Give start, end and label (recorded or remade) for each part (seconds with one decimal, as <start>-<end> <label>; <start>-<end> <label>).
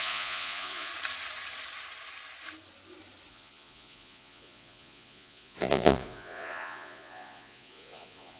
0.0-0.9 remade; 0.9-3.3 recorded; 3.3-8.4 remade